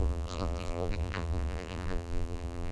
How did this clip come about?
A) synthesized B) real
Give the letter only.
A